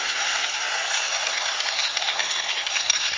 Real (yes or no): no